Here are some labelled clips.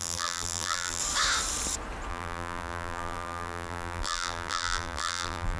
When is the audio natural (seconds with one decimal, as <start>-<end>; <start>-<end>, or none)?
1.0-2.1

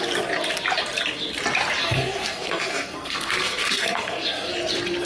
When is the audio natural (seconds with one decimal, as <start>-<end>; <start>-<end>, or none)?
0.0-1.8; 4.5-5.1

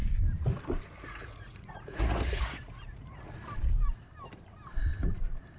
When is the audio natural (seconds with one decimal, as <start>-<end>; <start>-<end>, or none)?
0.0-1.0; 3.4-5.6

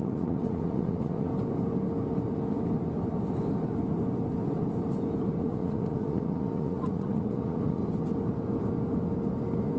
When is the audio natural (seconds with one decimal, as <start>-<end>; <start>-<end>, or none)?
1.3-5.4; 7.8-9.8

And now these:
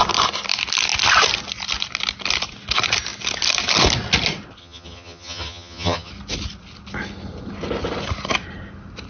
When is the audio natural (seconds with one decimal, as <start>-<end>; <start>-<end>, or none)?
0.0-4.6; 6.1-9.1

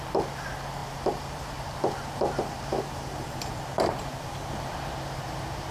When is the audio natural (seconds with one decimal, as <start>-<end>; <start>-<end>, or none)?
0.0-0.8; 3.6-5.7

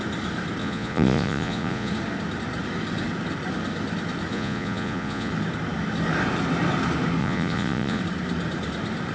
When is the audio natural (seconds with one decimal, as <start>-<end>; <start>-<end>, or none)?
0.0-0.6; 1.9-4.3; 5.3-7.2; 8.0-9.1